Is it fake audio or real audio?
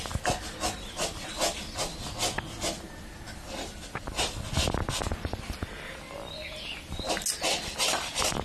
real